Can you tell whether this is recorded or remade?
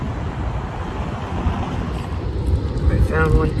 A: recorded